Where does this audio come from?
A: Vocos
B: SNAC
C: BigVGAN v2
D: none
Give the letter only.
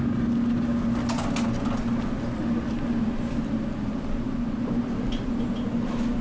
D